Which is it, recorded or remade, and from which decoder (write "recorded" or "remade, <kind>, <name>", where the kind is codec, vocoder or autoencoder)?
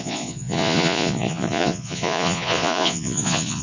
remade, vocoder, Vocos